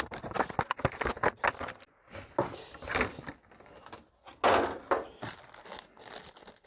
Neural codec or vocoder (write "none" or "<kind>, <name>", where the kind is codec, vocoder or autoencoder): none